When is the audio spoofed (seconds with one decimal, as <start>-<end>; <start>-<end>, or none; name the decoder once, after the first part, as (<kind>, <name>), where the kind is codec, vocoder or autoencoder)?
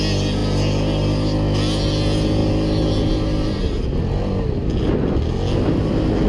none